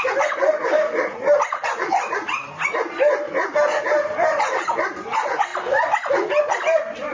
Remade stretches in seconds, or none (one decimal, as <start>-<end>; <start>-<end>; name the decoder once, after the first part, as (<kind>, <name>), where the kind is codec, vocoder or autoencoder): 0.0-1.6 (vocoder, BigVGAN v2); 3.9-5.5; 6.4-7.1